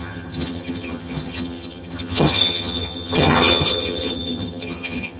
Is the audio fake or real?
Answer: fake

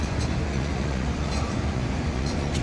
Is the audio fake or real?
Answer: fake